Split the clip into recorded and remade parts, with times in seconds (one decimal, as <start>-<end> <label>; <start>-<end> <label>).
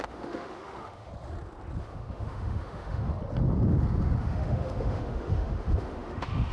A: 0.0-1.1 remade; 1.1-1.8 recorded; 1.8-3.1 remade; 3.1-4.2 recorded; 4.2-6.5 remade